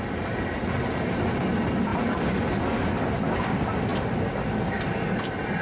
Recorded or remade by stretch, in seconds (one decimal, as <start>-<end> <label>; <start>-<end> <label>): 0.0-1.9 recorded; 1.9-2.5 remade; 2.5-3.9 recorded; 3.9-5.0 remade; 5.0-5.6 recorded